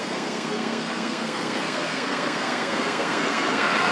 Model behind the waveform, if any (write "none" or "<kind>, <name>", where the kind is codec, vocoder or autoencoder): codec, SNAC